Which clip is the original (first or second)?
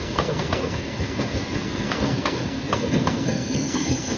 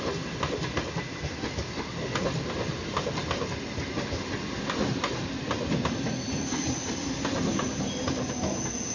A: second